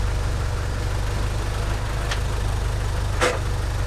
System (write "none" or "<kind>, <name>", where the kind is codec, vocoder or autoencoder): none